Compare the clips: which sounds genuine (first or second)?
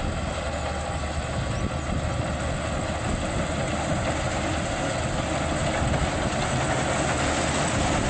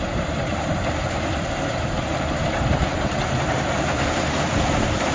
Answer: first